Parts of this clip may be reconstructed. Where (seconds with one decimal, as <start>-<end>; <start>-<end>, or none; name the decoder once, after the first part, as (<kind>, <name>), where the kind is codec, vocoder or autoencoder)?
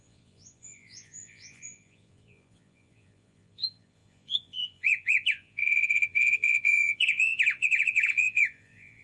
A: 0.0-9.0 (vocoder, Vocos)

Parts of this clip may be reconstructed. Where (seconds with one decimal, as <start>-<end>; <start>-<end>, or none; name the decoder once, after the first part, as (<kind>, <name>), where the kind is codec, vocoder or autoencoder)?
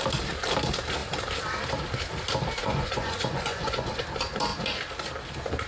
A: 2.6-4.0 (vocoder, Vocos)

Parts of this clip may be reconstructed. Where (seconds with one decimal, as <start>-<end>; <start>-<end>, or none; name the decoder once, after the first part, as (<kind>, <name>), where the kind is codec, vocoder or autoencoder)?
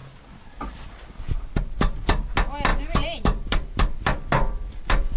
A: none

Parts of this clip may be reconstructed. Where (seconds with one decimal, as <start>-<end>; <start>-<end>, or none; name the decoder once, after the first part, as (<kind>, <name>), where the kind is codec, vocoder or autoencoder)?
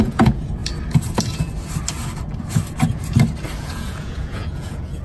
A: 0.0-0.6 (vocoder, Vocos); 3.6-5.0